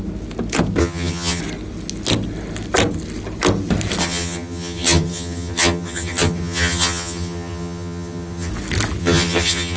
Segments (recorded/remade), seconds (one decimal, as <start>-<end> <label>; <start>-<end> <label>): 0.0-0.8 recorded; 0.8-1.4 remade; 1.4-4.0 recorded; 4.0-8.5 remade; 8.5-9.0 recorded; 9.0-9.8 remade